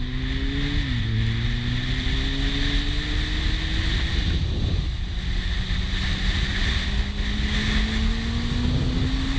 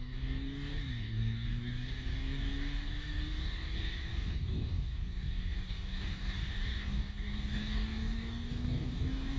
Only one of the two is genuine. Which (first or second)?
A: first